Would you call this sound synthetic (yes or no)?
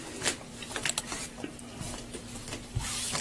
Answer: no